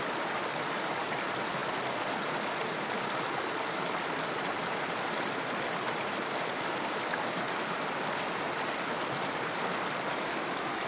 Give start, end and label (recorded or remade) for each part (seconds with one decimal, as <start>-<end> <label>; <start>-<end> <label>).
0.0-10.9 recorded